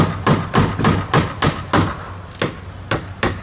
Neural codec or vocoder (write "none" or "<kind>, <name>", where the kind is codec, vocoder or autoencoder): none